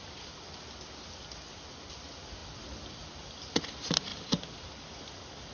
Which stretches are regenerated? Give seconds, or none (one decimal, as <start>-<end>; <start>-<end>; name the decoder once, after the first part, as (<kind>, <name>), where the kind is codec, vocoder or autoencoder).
4.1-5.5 (vocoder, BigVGAN v2)